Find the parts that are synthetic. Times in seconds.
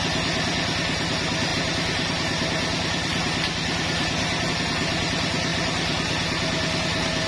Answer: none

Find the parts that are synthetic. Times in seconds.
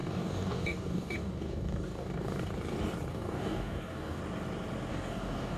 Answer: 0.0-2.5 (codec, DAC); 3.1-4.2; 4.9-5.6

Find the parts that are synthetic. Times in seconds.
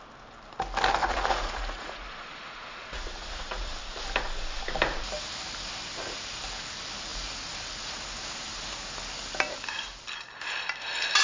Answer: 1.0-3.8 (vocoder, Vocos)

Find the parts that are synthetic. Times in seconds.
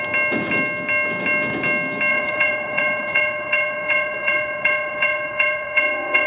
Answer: 2.1-6.3 (vocoder, WaveNeXt)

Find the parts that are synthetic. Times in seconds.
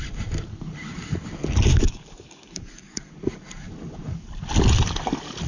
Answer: 1.7-3.1 (codec, DAC)